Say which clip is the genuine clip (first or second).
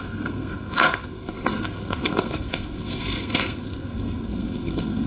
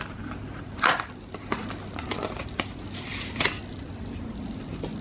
second